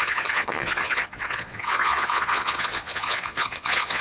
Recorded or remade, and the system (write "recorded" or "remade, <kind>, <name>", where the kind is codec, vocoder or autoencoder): remade, vocoder, Vocos